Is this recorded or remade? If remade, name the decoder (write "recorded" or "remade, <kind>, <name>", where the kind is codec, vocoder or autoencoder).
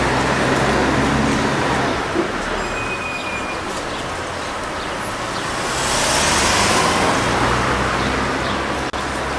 recorded